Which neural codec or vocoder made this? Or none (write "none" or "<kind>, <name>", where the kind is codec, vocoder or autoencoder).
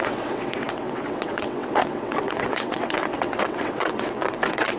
vocoder, WaveNeXt